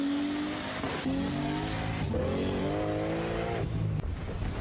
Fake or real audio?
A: real